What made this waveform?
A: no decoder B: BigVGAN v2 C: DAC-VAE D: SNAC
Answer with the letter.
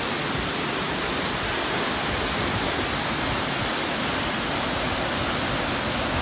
A